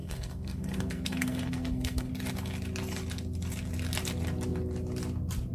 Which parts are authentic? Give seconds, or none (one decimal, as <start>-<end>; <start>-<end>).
2.1-5.5